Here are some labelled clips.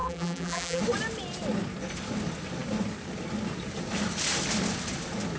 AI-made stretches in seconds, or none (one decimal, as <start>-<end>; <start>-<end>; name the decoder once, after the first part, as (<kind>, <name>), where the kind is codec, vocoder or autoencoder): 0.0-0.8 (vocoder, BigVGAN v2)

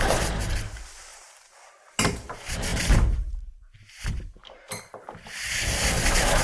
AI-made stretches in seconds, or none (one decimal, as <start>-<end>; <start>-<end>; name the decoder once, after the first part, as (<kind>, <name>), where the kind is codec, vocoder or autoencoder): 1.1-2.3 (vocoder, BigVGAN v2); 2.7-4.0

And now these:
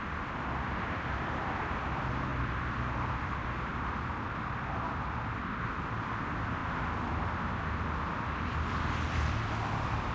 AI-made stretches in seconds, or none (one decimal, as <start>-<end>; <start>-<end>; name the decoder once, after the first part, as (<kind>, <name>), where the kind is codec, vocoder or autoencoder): 0.0-6.6 (vocoder, BigVGAN v2); 8.3-10.1

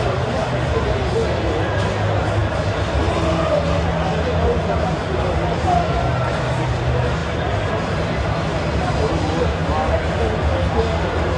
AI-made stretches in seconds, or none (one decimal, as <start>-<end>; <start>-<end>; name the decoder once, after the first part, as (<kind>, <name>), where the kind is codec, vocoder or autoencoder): none

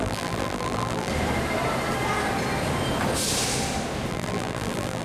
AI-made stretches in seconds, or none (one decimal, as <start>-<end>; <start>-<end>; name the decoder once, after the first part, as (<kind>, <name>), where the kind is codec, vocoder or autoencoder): 0.0-1.1 (vocoder, BigVGAN v2); 4.1-5.0

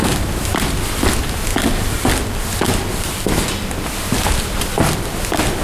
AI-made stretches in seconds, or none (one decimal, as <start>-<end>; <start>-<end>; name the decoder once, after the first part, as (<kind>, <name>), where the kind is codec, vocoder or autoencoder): none

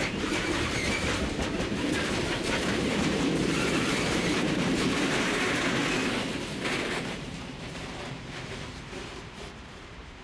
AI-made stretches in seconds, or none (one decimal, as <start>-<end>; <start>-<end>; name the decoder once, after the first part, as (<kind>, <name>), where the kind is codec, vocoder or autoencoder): 0.0-5.8 (vocoder, BigVGAN v2); 6.8-10.2